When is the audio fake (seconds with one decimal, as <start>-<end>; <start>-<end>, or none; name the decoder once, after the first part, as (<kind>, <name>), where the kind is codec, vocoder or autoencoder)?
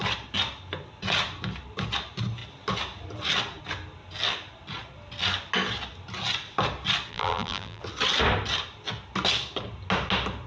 7.1-7.8 (vocoder, BigVGAN v2)